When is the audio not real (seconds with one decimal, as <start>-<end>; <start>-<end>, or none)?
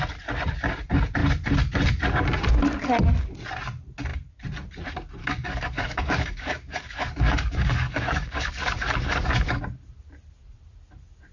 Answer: 5.2-9.6